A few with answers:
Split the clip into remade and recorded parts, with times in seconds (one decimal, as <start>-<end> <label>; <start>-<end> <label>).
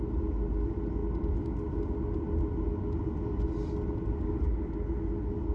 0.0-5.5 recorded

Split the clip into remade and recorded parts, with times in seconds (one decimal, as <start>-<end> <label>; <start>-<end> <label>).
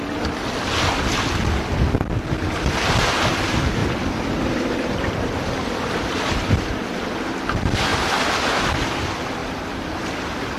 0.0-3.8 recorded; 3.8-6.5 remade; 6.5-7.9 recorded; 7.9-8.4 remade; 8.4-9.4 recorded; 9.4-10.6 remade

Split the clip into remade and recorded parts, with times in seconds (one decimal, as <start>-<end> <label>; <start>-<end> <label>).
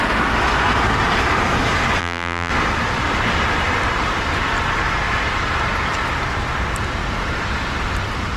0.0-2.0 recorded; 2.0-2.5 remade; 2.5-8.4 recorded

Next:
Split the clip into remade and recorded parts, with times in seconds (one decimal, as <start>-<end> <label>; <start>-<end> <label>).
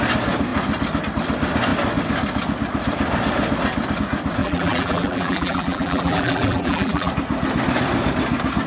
0.0-4.4 recorded; 4.4-7.1 remade; 7.1-8.7 recorded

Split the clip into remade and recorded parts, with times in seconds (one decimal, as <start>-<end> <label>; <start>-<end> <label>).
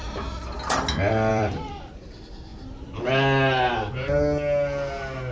0.0-1.3 recorded; 1.3-1.8 remade; 1.8-5.3 recorded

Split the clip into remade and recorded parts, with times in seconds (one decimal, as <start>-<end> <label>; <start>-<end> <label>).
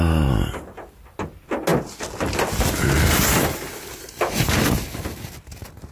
0.0-5.9 recorded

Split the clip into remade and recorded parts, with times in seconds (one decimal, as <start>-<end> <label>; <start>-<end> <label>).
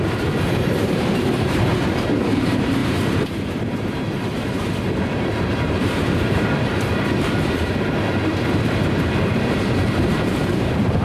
0.0-11.0 remade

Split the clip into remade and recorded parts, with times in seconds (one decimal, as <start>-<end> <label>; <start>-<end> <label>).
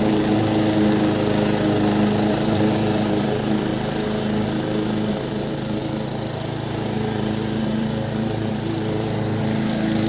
0.0-0.4 remade; 0.4-2.3 recorded; 2.3-3.7 remade; 3.7-5.1 recorded; 5.1-10.1 remade